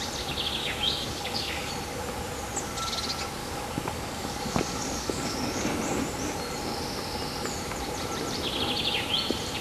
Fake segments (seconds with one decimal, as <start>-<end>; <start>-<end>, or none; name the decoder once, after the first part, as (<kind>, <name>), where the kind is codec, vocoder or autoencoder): 0.6-1.7 (codec, DAC); 3.4-5.7